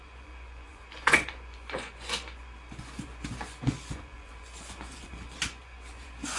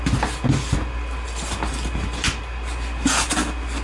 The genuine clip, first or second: second